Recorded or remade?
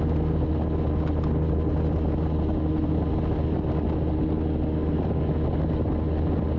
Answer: recorded